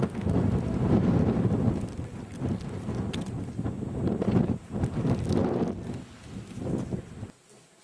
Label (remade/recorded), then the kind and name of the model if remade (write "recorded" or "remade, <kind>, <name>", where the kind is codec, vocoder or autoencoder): recorded